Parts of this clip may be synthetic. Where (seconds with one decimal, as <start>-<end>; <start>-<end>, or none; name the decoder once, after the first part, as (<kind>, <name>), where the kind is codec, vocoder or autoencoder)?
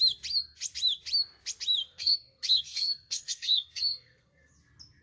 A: 1.8-4.5 (codec, SNAC)